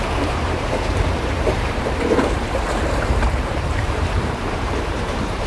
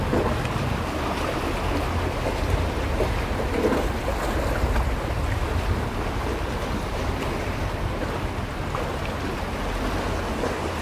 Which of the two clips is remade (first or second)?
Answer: first